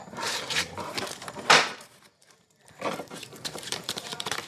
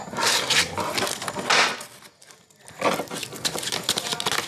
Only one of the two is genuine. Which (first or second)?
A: second